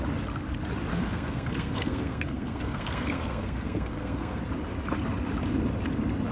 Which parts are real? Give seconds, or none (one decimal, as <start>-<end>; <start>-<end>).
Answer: 0.0-0.9; 4.4-6.3